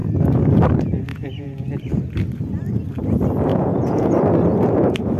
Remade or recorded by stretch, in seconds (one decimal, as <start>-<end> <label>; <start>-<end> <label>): 0.0-1.1 recorded; 1.1-1.7 remade; 1.7-3.5 recorded; 3.5-4.1 remade; 4.1-5.2 recorded